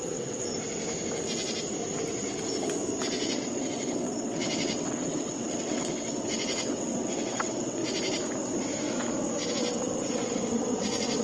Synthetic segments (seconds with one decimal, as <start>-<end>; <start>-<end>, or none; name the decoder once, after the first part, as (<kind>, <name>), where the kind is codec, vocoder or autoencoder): 0.0-0.5 (vocoder, WaveNeXt); 3.0-7.8; 9.5-11.2